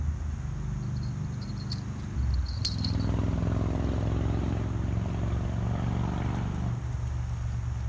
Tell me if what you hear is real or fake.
real